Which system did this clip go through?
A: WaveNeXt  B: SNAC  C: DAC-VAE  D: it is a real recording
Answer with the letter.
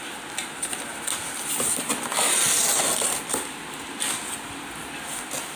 D